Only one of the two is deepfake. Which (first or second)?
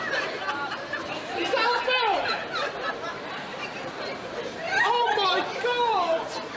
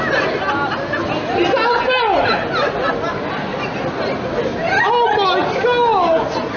first